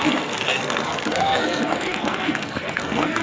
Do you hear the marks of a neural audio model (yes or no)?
yes